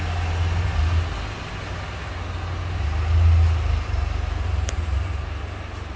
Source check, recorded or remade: recorded